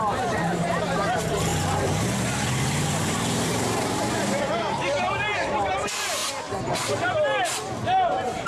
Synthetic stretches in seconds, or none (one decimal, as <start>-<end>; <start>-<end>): 0.0-6.2; 7.7-8.5